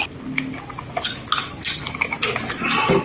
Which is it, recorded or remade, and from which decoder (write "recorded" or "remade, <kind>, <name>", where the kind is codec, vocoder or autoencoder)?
recorded